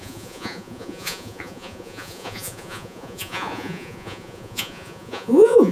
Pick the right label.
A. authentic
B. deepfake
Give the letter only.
B